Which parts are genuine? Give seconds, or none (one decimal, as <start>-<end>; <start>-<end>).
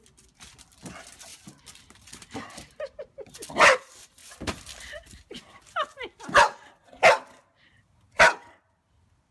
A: 0.0-9.3